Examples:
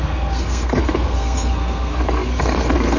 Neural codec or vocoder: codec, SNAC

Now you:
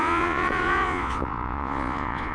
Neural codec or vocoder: vocoder, Vocos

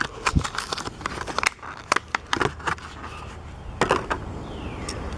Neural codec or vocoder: none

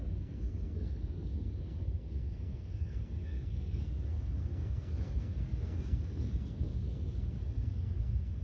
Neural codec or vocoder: codec, SNAC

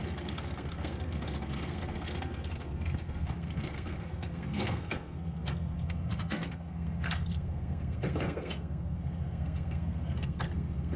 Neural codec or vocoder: codec, SNAC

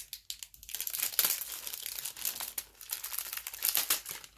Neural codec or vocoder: none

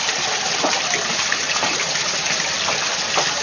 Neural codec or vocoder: none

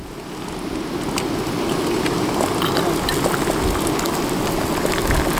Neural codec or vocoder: none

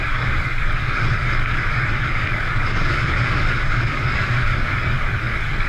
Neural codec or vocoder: codec, DAC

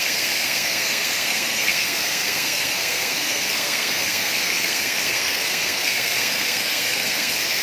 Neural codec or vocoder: codec, SNAC